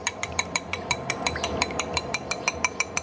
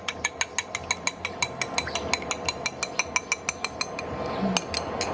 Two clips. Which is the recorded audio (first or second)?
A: second